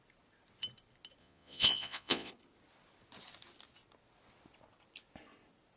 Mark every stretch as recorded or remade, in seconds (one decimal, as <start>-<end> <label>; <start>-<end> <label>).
0.0-1.2 recorded; 1.2-2.3 remade; 2.3-5.8 recorded